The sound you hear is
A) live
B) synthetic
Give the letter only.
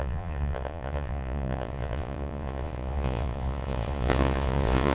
B